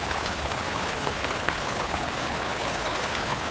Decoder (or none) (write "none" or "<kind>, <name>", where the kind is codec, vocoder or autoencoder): codec, HILCodec